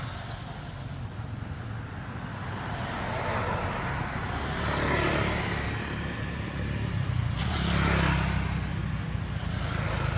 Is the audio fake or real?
real